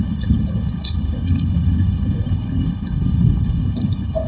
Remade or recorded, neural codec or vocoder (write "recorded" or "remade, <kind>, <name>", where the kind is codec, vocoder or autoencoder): remade, codec, HILCodec